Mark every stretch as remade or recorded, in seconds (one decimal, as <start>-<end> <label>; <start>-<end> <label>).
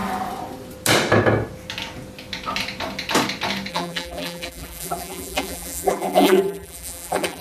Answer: 0.0-3.7 recorded; 3.7-7.4 remade